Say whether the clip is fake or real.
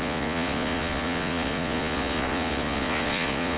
fake